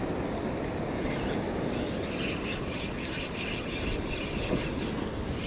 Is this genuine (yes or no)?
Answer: yes